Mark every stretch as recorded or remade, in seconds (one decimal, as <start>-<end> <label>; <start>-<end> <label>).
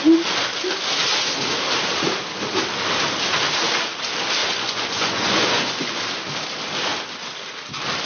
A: 0.0-4.4 recorded; 4.4-6.0 remade; 6.0-8.1 recorded